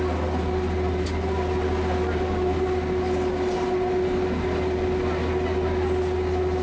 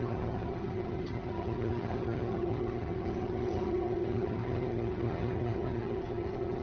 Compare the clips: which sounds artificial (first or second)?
second